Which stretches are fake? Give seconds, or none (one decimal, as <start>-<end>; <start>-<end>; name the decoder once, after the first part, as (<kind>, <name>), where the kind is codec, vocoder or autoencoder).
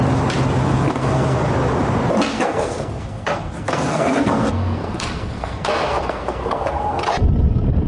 0.6-1.5 (codec, SNAC); 2.3-7.0